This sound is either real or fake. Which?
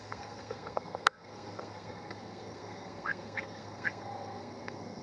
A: fake